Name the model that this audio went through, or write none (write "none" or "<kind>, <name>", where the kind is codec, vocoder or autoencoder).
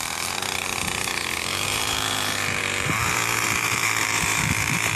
vocoder, BigVGAN v2